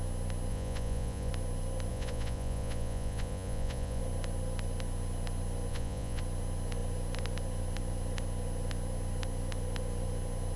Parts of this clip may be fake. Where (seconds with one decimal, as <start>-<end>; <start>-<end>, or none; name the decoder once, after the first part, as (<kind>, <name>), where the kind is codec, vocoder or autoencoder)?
0.5-1.3 (vocoder, Vocos); 1.9-4.0; 5.7-6.2